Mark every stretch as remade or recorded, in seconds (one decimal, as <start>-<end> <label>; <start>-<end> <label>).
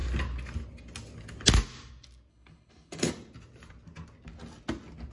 0.0-2.3 recorded; 2.3-3.1 remade; 3.1-5.1 recorded